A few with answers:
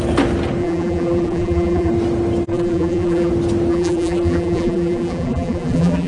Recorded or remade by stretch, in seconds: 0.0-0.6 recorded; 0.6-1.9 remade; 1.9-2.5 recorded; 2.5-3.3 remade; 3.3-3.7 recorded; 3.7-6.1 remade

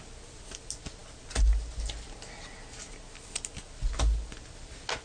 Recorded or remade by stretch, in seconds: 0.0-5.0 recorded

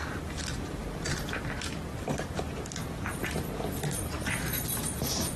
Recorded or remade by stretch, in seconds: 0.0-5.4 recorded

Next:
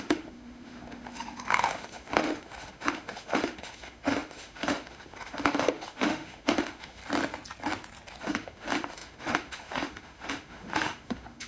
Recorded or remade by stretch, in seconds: 0.0-7.0 remade; 7.0-8.2 recorded; 8.2-11.5 remade

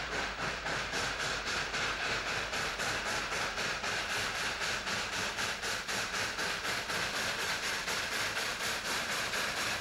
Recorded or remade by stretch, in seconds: 0.0-9.8 remade